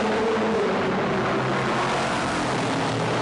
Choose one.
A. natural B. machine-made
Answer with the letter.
A